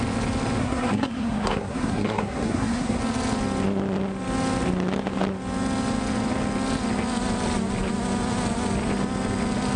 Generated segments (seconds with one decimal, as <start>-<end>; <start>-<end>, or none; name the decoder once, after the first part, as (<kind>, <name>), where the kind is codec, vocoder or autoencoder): 0.6-3.0 (codec, SNAC)